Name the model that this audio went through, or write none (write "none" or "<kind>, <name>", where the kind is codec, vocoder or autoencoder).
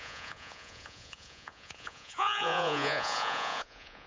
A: vocoder, Vocos